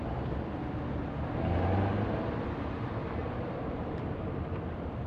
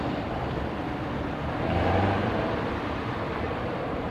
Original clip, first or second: first